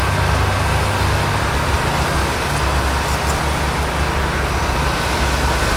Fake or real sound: real